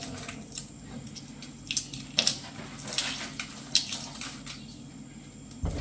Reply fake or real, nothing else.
real